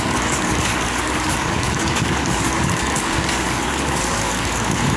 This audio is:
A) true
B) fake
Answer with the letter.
B